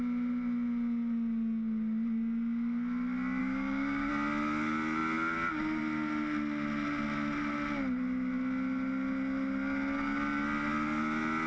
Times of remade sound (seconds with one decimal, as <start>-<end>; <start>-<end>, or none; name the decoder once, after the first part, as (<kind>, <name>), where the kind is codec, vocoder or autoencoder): 3.4-4.1 (codec, DAC)